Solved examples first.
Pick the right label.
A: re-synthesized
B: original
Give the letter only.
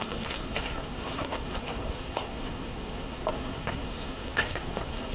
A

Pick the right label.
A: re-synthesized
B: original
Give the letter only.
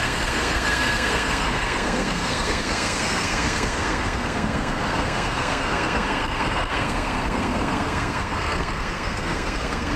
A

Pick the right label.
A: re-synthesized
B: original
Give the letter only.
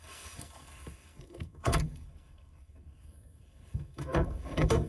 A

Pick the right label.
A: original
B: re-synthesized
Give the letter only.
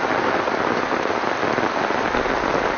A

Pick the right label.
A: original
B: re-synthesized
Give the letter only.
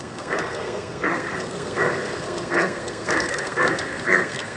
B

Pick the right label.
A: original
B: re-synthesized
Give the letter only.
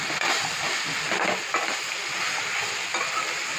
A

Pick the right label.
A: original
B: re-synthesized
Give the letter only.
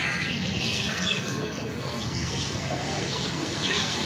B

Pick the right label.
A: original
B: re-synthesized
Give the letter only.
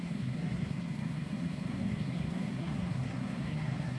B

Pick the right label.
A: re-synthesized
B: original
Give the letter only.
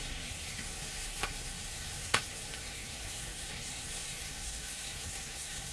A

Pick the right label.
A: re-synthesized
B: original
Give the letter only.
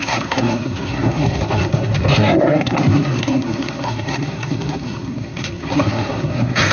A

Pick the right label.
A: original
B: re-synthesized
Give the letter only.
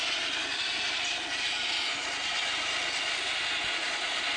A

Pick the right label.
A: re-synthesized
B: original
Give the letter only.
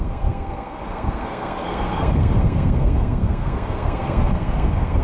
A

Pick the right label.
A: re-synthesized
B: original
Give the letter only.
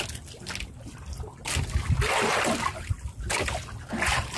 B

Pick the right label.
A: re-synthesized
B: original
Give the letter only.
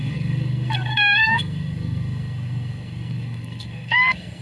A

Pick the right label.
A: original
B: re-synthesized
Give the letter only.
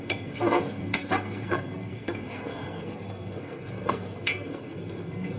B